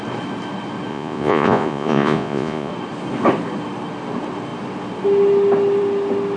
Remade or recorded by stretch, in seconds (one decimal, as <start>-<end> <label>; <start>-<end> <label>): 0.0-0.9 recorded; 0.9-2.7 remade; 2.7-6.4 recorded